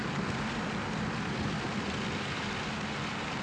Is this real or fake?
real